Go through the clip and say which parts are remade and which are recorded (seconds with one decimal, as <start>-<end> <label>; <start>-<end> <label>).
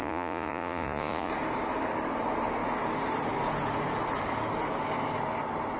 0.0-1.3 remade; 1.3-5.8 recorded